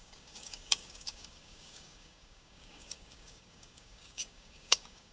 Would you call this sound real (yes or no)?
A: no